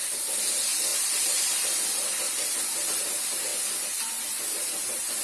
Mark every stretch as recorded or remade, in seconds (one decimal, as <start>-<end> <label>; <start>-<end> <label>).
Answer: 0.0-5.2 recorded